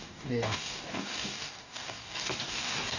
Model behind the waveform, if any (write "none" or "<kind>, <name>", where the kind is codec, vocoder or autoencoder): codec, DAC